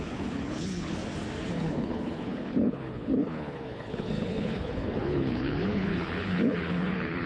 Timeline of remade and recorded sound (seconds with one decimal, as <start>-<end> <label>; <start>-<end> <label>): 0.0-1.0 remade; 1.0-1.5 recorded; 1.5-7.3 remade